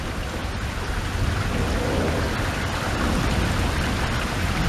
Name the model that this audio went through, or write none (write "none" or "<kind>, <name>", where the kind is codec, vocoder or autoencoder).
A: none